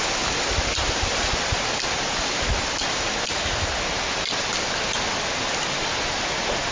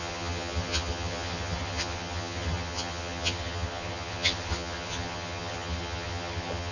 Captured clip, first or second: first